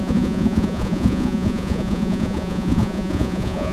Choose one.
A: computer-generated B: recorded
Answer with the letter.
A